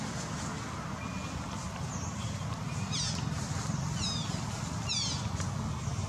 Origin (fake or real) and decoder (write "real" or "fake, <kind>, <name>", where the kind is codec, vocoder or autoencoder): real